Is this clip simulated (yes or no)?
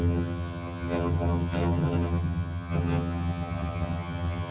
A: yes